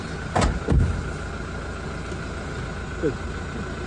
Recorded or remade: recorded